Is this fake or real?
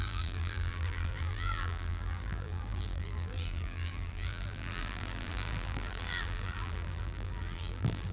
fake